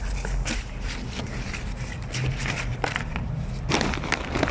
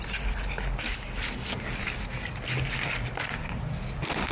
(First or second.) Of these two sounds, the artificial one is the first